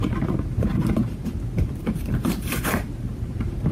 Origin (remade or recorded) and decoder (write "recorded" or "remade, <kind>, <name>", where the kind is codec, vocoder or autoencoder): remade, vocoder, BigVGAN v2